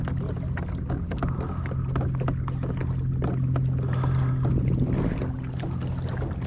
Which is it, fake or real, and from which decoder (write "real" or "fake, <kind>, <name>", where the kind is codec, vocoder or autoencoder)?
real